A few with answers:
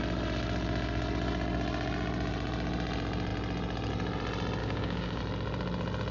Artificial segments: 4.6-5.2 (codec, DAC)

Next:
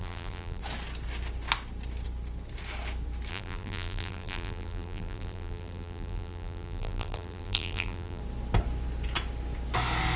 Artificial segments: 0.0-0.6 (vocoder, BigVGAN v2); 3.3-8.2

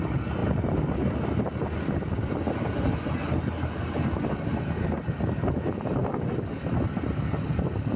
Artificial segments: none